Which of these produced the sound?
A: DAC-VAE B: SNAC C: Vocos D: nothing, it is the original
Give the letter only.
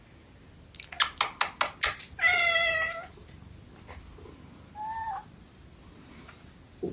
D